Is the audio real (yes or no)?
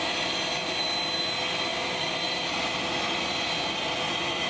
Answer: yes